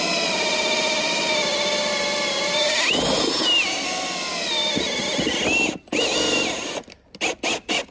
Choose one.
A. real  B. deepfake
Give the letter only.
A